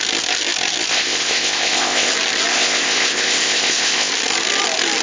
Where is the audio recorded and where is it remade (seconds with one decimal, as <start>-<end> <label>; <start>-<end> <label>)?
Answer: 0.0-0.9 recorded; 0.9-2.1 remade; 2.1-2.5 recorded; 2.5-4.1 remade; 4.1-5.0 recorded